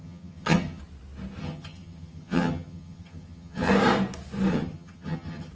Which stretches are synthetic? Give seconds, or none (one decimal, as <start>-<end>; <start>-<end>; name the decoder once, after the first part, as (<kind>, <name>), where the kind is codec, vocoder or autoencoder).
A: 0.0-0.8 (vocoder, HiFi-GAN); 1.4-3.7; 4.5-5.5